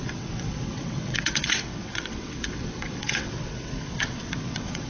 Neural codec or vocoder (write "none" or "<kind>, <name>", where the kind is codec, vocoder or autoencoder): vocoder, WaveNeXt